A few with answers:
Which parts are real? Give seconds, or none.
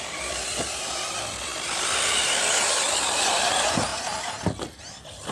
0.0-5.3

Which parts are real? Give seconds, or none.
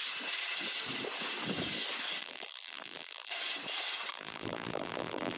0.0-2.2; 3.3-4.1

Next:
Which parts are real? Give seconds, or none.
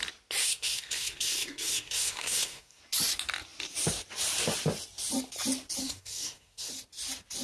0.0-0.4; 2.8-5.8; 6.7-7.4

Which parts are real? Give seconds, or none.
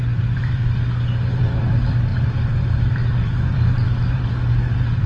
0.6-1.3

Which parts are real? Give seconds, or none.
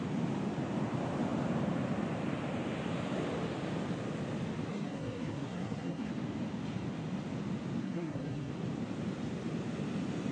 0.0-4.7; 6.1-7.8; 8.5-10.3